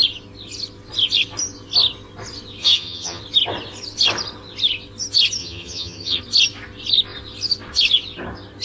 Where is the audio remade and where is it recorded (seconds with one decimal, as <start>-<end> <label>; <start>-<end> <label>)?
0.0-2.6 recorded; 2.6-3.2 remade; 3.2-5.4 recorded; 5.4-6.2 remade; 6.2-8.6 recorded